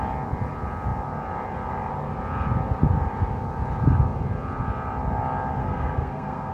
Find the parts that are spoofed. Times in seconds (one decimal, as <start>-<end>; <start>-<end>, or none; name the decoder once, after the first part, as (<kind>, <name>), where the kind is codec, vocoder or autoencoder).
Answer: 5.6-6.5 (codec, SNAC)